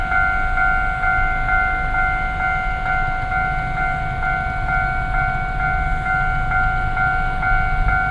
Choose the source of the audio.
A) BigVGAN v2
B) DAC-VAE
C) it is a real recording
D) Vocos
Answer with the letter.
C